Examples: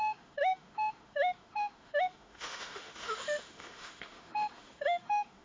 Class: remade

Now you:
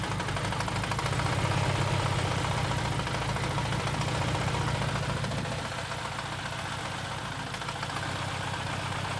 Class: recorded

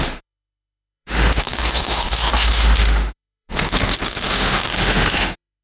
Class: remade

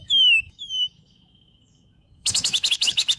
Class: remade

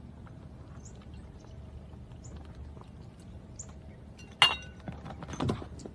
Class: recorded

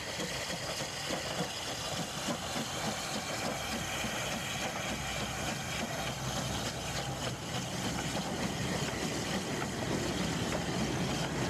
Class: recorded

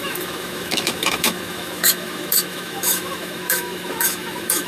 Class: remade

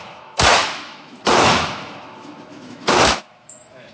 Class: remade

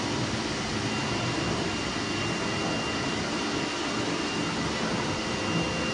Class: recorded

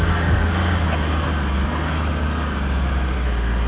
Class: recorded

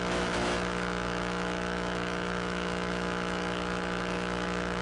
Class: remade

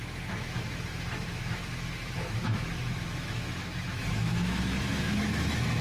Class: remade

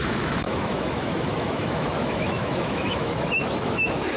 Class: remade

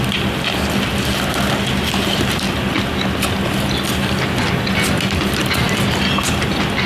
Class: recorded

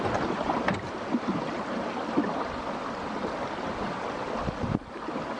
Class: recorded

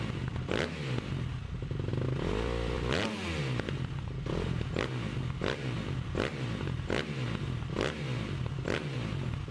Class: recorded